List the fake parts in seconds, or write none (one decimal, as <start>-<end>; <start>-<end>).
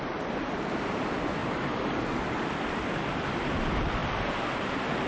0.0-1.4; 3.1-5.1